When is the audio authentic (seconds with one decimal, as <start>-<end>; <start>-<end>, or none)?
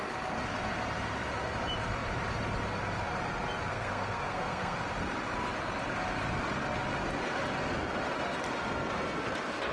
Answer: 0.0-3.7; 4.8-9.7